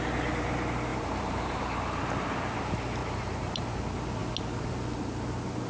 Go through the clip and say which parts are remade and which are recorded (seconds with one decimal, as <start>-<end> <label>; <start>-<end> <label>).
0.0-0.9 recorded; 0.9-1.6 remade; 1.6-3.0 recorded; 3.0-3.8 remade; 3.8-5.7 recorded